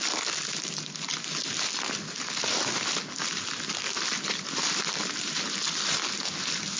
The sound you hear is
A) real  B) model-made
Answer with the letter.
A